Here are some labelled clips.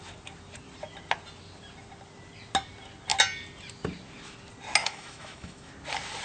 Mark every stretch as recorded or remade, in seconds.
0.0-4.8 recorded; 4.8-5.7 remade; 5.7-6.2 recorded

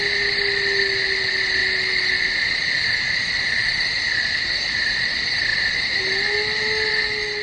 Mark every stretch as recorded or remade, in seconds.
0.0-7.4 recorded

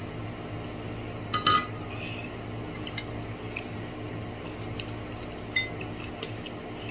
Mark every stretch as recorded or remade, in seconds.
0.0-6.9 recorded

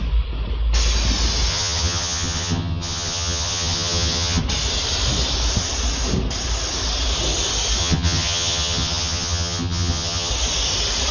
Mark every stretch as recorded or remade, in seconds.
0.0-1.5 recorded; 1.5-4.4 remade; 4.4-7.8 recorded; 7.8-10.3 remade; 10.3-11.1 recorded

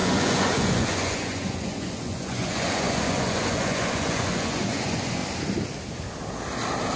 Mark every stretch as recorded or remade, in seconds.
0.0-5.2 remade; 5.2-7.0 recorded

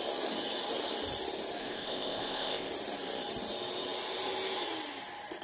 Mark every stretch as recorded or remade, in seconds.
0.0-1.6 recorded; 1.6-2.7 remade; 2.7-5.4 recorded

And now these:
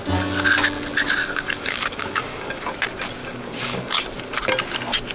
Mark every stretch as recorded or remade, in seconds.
0.0-1.2 recorded; 1.2-2.7 remade; 2.7-3.2 recorded; 3.2-4.0 remade; 4.0-5.1 recorded